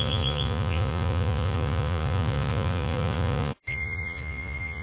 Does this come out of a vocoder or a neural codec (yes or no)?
yes